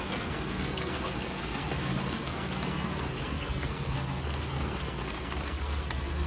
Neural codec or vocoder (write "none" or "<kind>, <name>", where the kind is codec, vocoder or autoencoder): codec, SNAC